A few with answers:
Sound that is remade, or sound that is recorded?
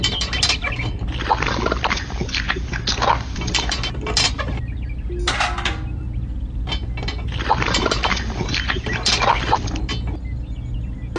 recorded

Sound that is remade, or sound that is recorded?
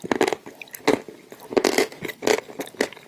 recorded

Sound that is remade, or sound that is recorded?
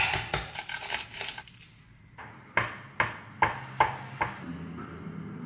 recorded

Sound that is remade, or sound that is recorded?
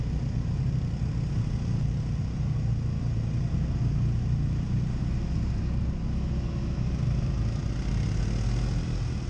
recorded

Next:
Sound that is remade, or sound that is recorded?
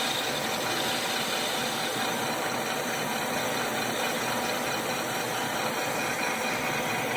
recorded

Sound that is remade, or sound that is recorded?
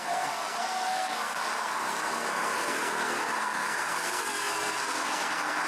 remade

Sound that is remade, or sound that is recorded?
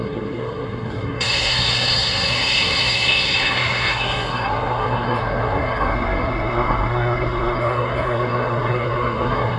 remade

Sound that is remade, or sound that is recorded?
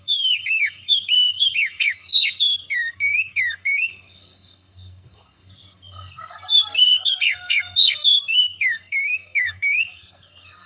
remade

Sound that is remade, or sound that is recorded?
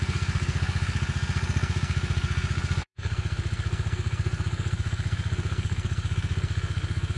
remade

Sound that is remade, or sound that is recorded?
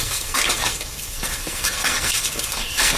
remade